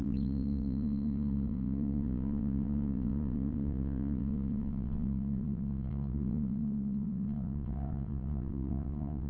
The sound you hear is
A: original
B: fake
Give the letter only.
B